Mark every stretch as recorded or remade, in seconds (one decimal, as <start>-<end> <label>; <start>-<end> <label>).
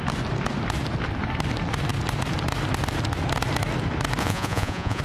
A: 0.0-4.2 recorded; 4.2-5.0 remade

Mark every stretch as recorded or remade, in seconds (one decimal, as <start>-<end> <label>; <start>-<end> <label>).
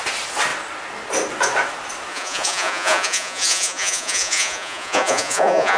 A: 0.0-2.1 recorded; 2.1-5.8 remade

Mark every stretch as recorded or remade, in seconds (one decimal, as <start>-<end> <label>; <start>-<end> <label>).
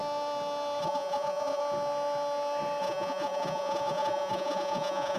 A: 0.0-0.8 recorded; 0.8-1.6 remade; 1.6-2.8 recorded; 2.8-5.2 remade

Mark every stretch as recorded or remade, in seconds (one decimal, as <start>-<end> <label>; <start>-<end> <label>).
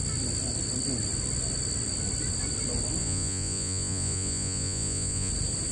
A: 0.0-3.0 recorded; 3.0-5.3 remade; 5.3-5.7 recorded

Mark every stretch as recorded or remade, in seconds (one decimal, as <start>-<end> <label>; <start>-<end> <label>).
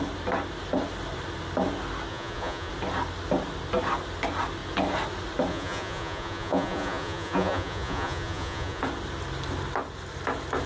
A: 0.0-2.1 recorded; 2.1-2.7 remade; 2.7-5.5 recorded; 5.5-8.8 remade; 8.8-10.7 recorded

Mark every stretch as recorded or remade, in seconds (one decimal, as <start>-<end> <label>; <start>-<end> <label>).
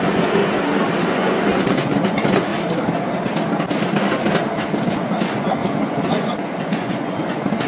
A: 0.0-0.4 remade; 0.4-1.1 recorded; 1.1-2.5 remade; 2.5-4.9 recorded; 4.9-7.7 remade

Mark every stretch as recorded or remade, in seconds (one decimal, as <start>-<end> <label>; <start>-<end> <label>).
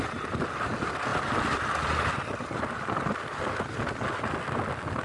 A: 0.0-5.0 recorded